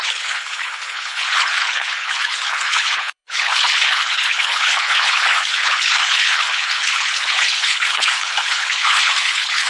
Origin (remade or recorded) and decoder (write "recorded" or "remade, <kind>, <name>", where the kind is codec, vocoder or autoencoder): remade, codec, HILCodec